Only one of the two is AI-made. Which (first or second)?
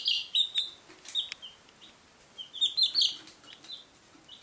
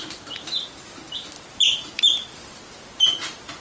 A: second